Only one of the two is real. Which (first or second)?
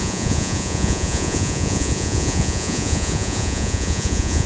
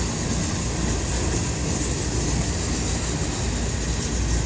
second